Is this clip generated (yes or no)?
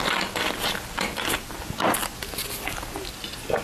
no